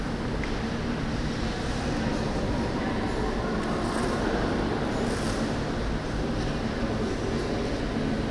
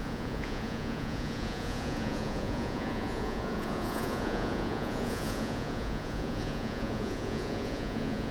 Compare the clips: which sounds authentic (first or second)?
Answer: first